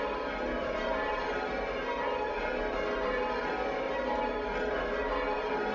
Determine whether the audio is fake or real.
fake